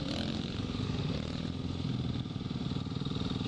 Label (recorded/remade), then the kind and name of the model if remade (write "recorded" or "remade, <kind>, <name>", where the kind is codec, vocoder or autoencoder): recorded